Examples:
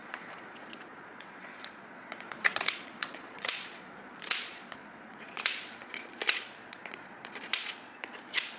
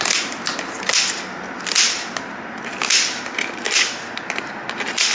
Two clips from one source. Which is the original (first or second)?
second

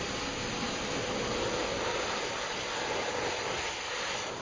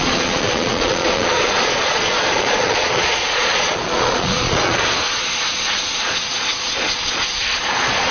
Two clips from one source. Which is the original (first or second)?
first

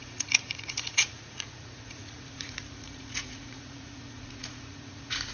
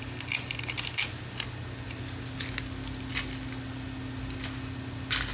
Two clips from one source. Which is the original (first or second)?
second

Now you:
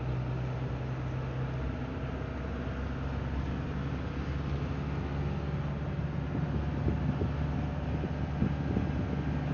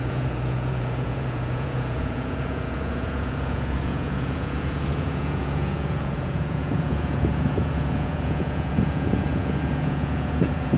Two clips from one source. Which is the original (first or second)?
first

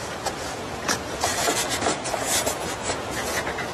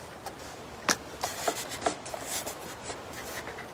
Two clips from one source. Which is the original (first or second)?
second